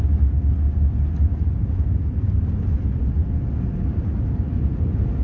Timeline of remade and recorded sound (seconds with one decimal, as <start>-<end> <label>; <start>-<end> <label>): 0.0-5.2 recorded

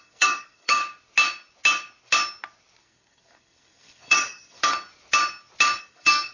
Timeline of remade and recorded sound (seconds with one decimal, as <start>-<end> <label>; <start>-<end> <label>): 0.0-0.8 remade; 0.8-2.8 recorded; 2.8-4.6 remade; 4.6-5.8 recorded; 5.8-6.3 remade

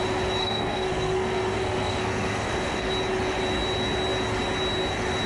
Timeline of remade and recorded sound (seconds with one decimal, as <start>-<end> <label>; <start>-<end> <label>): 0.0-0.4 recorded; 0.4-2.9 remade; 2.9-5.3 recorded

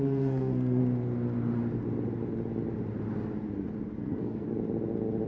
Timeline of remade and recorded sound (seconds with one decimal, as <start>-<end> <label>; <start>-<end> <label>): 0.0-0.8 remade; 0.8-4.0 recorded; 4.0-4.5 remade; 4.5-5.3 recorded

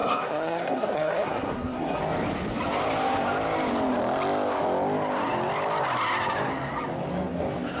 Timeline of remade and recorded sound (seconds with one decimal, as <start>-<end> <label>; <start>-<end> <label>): 0.0-2.0 remade; 2.0-7.8 recorded

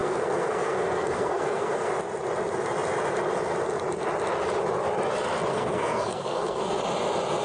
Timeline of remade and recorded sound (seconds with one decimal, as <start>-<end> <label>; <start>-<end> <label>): 0.0-1.9 remade; 1.9-5.5 recorded; 5.5-6.8 remade; 6.8-7.4 recorded

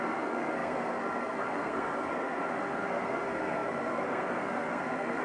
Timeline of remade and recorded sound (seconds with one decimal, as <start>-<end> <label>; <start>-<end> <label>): 0.0-5.2 remade